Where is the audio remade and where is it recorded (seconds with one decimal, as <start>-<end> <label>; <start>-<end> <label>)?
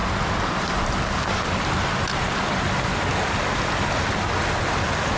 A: 0.0-5.2 recorded